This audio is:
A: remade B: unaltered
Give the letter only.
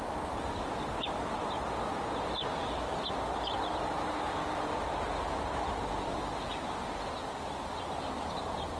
B